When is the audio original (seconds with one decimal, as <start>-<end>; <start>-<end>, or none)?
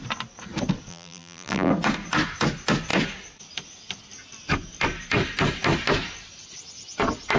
0.0-0.9; 1.7-7.4